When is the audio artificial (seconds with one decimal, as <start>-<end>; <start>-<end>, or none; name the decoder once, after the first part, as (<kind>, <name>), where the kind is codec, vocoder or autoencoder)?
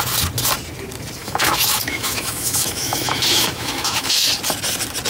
1.2-4.3 (autoencoder, DAC-VAE)